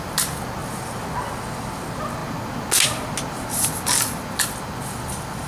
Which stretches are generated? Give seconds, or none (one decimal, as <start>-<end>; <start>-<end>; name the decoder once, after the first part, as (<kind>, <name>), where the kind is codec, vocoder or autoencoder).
none